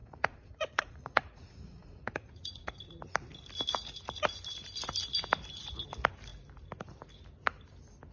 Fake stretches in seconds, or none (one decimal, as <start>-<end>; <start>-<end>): 0.0-2.8